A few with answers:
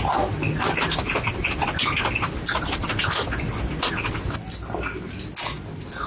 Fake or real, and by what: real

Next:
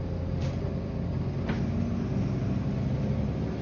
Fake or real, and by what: real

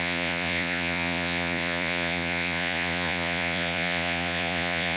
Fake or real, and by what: fake, vocoder, Vocos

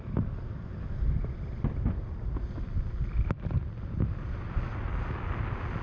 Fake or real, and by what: real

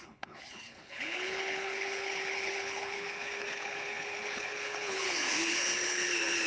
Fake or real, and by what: fake, codec, HILCodec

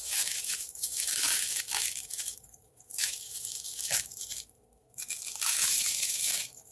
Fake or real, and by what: fake, autoencoder, DAC-VAE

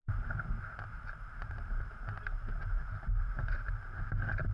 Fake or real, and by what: fake, vocoder, BigVGAN v2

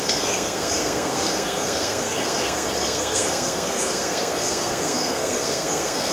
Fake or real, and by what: fake, codec, SNAC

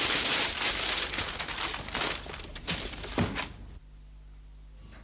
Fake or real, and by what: real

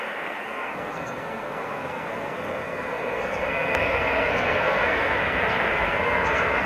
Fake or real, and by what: fake, codec, SNAC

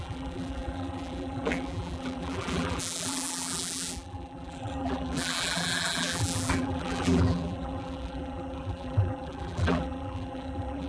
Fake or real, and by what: fake, vocoder, BigVGAN v2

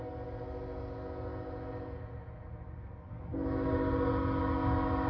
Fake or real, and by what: real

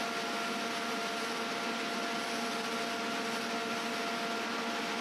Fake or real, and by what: real